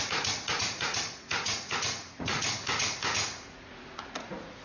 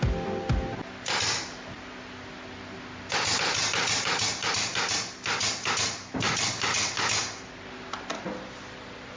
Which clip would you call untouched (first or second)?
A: second